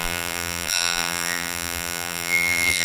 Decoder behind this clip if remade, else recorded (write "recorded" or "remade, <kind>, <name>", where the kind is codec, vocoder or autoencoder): remade, vocoder, BigVGAN v2